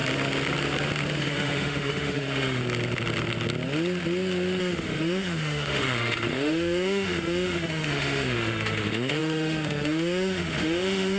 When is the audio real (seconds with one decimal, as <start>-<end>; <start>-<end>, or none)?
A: 0.0-1.2; 2.6-4.6